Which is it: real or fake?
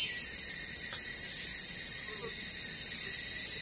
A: real